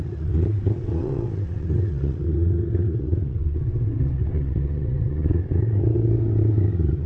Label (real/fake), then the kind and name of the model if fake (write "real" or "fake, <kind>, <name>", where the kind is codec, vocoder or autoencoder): fake, vocoder, WaveNeXt